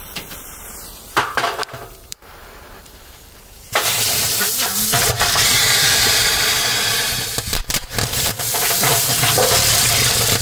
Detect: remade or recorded remade